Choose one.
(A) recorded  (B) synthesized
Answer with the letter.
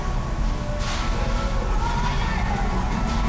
A